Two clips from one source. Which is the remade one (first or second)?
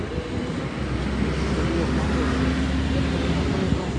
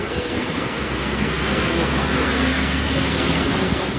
second